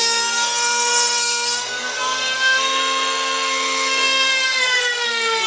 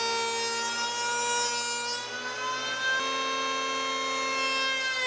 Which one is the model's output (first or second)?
first